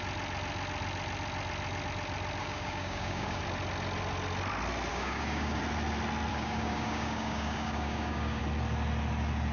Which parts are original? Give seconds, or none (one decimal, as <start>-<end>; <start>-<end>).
0.0-2.4; 3.4-4.9; 5.6-6.3; 8.4-9.5